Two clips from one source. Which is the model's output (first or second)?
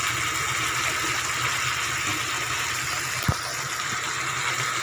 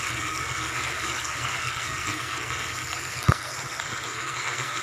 second